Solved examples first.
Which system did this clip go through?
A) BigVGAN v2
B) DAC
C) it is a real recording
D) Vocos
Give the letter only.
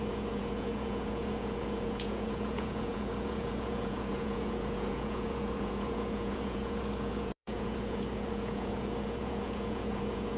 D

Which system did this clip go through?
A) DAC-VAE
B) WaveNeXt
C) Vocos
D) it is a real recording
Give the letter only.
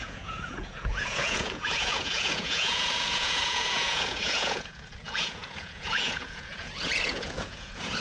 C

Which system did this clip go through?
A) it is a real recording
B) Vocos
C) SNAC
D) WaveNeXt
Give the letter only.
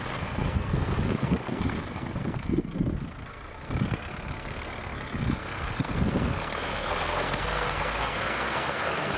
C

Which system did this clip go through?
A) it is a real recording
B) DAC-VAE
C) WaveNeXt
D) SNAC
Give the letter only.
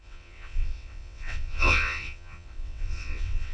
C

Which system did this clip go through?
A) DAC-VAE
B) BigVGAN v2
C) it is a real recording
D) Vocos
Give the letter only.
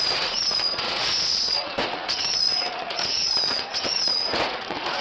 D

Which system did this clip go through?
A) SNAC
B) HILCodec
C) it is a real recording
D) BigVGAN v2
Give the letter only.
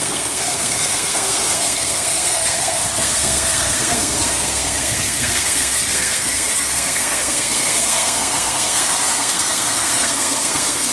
A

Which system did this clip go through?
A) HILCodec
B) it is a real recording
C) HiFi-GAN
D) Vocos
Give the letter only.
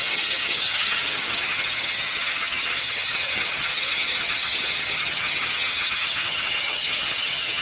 C